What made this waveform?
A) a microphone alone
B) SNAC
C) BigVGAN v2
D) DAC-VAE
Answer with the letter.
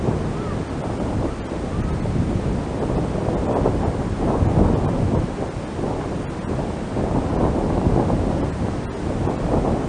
A